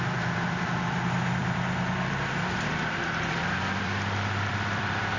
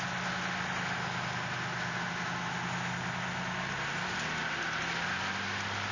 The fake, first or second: first